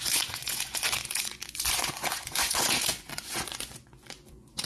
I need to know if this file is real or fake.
fake